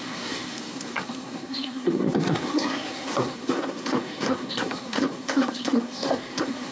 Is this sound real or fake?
fake